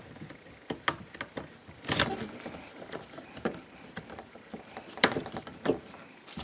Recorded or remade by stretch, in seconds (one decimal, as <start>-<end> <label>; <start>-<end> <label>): 0.0-1.6 recorded; 1.6-5.4 remade; 5.4-6.4 recorded